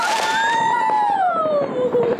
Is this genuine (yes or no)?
no